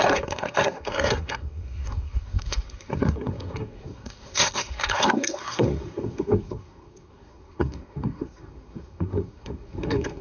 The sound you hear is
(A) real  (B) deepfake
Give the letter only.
B